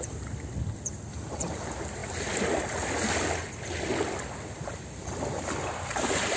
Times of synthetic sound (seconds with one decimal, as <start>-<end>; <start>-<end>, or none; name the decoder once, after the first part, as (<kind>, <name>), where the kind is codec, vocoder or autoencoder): none